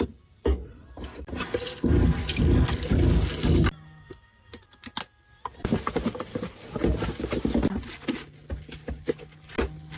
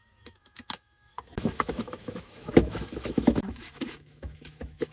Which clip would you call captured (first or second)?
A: first